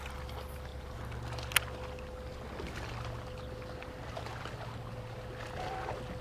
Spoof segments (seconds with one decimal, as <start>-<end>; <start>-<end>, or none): none